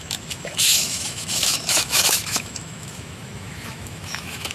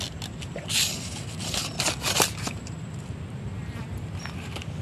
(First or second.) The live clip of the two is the second